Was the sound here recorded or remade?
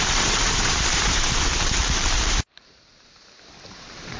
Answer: remade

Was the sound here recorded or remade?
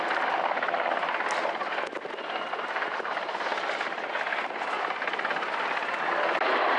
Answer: recorded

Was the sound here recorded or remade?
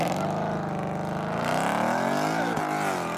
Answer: recorded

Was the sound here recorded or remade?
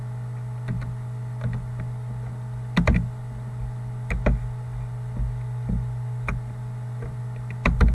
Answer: recorded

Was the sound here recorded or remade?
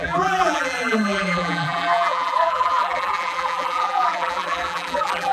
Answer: remade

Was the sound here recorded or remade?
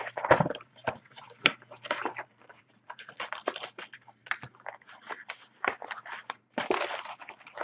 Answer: remade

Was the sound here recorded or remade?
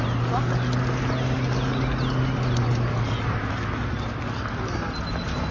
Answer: recorded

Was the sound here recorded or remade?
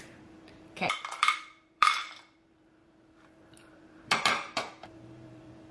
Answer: remade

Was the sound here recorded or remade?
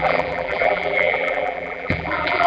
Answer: remade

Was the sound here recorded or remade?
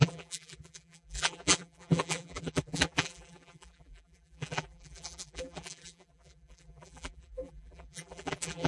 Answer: remade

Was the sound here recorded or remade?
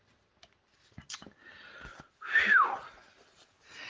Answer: recorded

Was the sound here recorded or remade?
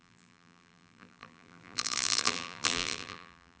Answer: remade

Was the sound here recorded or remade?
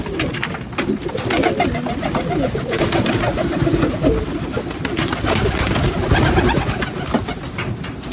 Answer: recorded